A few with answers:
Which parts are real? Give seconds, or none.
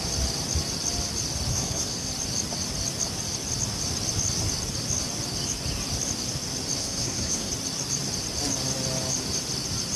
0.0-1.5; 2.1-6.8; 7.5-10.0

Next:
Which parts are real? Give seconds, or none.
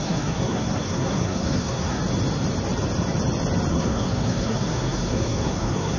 2.0-3.7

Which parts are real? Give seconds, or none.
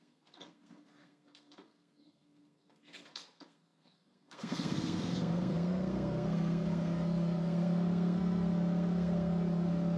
none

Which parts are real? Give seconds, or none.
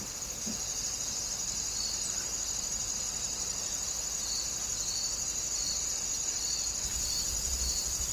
0.0-8.1